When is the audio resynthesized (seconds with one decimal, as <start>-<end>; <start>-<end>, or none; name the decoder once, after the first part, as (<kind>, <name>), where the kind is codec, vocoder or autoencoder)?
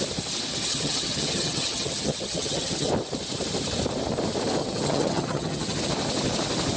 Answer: 0.5-2.9 (vocoder, HiFi-GAN); 4.6-5.8